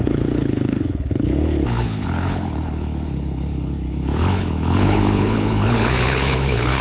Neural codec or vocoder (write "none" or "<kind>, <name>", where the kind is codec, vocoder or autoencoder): codec, HILCodec